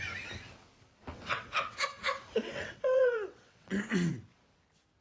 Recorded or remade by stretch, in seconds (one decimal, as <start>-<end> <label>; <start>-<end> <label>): 0.0-1.1 recorded; 1.1-4.1 remade; 4.1-5.0 recorded